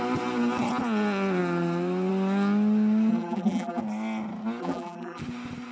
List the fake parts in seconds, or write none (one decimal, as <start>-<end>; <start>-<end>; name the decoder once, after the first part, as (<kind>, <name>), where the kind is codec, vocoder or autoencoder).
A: 3.1-3.8 (vocoder, BigVGAN v2); 4.6-5.2